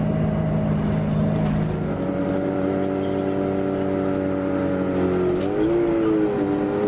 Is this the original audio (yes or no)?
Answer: yes